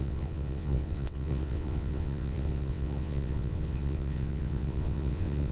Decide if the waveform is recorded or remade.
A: remade